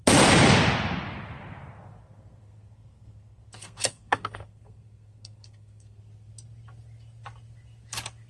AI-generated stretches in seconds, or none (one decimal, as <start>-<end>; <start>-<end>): 2.0-6.0